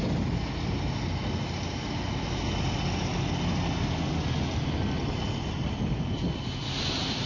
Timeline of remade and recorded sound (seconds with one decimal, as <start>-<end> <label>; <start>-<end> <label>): 0.0-7.3 recorded